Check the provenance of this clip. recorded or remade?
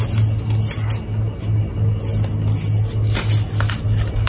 recorded